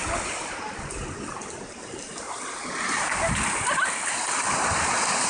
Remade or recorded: recorded